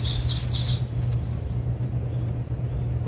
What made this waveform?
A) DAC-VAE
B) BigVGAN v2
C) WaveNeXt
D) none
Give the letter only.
D